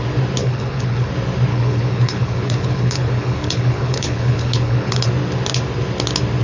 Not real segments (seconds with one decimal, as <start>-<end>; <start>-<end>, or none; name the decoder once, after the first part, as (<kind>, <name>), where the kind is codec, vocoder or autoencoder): 0.4-1.1 (codec, HILCodec); 1.5-5.1